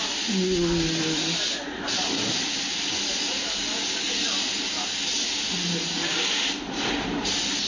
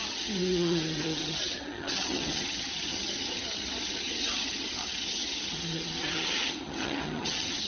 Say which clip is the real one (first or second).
first